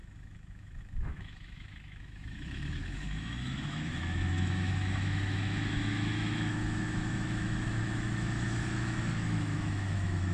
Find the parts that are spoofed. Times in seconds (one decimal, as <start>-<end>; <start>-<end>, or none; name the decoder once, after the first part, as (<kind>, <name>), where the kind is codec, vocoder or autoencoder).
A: 0.0-10.3 (autoencoder, DAC-VAE)